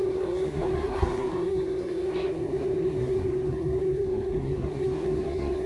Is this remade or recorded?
remade